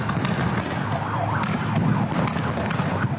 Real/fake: real